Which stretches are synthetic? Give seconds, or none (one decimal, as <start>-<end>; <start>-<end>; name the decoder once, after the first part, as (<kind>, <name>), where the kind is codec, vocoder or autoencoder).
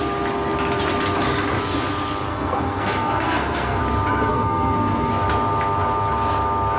2.3-3.8 (codec, SNAC); 4.3-5.1